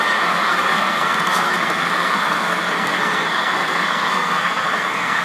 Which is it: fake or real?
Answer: fake